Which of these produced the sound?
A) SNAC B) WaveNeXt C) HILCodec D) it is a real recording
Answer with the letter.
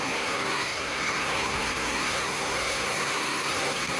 A